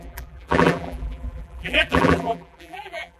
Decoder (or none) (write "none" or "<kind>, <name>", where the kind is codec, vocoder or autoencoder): vocoder, BigVGAN v2